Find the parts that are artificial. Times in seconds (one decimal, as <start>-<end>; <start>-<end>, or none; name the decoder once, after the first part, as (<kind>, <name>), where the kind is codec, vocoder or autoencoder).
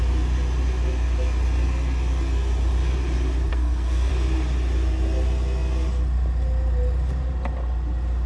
3.5-4.1 (codec, SNAC)